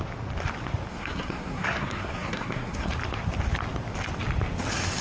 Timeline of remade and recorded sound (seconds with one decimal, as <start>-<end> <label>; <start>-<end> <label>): 0.0-0.9 recorded; 0.9-2.9 remade; 2.9-5.0 recorded

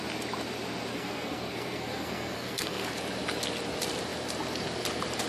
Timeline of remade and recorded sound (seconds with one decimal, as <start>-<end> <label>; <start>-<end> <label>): 0.0-0.9 recorded; 0.9-2.9 remade; 2.9-5.3 recorded

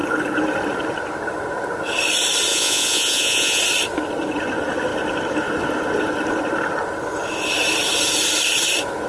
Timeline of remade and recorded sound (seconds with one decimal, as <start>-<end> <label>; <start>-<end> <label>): 0.0-2.5 recorded; 2.5-3.6 remade; 3.6-9.1 recorded

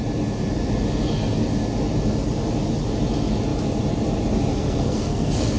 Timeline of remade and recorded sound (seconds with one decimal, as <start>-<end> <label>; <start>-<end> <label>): 0.0-4.5 recorded; 4.5-5.6 remade

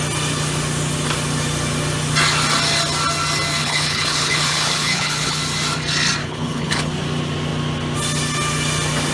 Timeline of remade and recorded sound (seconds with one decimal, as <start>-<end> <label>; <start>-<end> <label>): 0.0-3.6 recorded; 3.6-5.4 remade; 5.4-6.2 recorded; 6.2-6.9 remade; 6.9-9.1 recorded

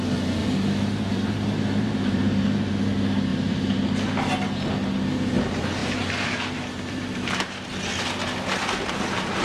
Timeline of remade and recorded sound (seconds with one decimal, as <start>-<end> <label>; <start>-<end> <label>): 0.0-0.4 recorded; 0.4-2.7 remade; 2.7-3.3 recorded; 3.3-3.8 remade; 3.8-5.8 recorded; 5.8-7.7 remade; 7.7-9.4 recorded